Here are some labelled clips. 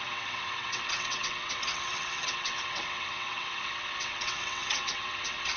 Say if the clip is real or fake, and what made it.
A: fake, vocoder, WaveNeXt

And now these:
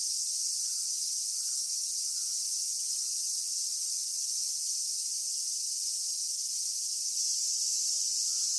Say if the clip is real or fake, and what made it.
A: real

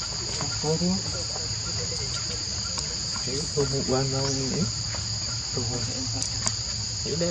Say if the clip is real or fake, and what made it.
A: real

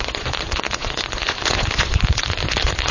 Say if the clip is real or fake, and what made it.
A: fake, vocoder, Vocos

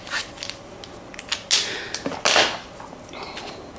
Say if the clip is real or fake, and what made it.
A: real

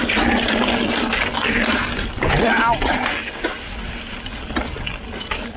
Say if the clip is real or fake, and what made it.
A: real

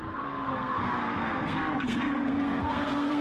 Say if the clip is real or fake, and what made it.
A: fake, codec, SNAC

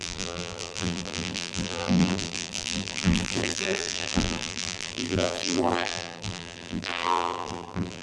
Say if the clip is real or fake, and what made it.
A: fake, vocoder, BigVGAN v2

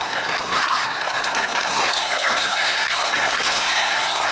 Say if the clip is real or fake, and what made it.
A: fake, codec, SNAC